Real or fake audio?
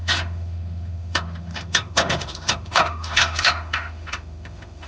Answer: fake